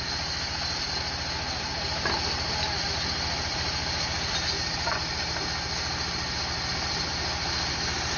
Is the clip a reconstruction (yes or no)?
no